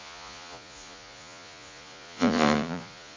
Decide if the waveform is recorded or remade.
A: remade